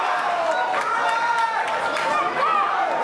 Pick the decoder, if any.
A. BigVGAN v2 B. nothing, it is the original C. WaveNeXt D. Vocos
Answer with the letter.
B